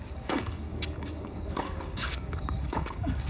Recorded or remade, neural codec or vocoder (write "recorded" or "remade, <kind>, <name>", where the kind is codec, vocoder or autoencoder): remade, codec, DAC